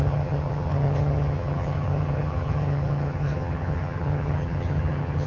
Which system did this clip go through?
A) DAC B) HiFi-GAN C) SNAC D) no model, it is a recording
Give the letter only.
B